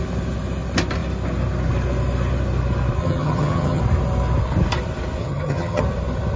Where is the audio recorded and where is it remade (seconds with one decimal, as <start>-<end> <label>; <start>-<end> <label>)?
0.0-3.0 recorded; 3.0-3.8 remade; 3.8-5.2 recorded; 5.2-5.8 remade; 5.8-6.4 recorded